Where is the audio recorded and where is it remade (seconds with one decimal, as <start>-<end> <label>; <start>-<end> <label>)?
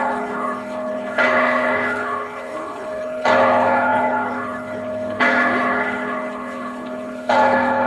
0.0-7.9 remade